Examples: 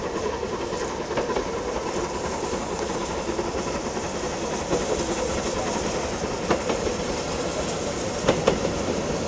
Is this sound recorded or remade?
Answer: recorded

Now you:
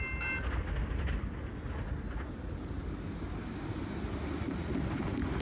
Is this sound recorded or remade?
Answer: recorded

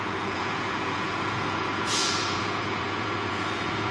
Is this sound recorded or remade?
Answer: remade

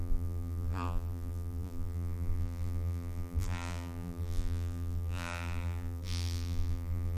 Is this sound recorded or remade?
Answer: remade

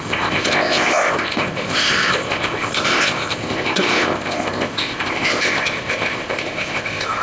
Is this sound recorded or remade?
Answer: remade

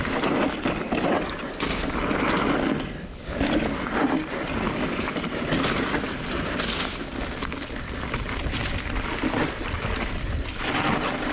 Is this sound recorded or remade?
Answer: recorded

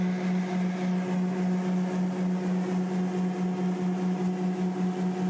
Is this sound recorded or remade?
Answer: recorded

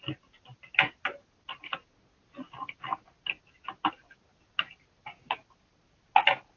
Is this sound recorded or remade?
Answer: recorded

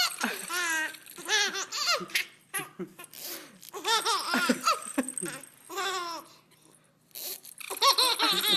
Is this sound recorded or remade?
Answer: recorded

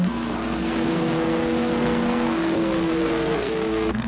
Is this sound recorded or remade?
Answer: remade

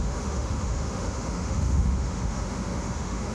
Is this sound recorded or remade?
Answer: remade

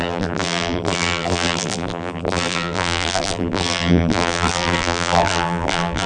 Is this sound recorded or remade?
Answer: remade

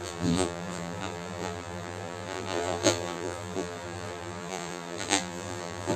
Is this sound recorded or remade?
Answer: remade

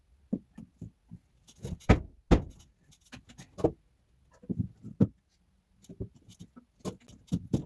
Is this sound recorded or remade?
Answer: recorded